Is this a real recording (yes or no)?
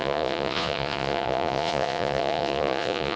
no